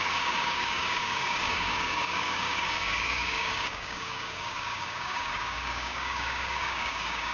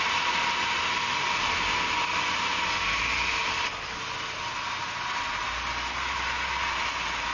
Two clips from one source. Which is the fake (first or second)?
first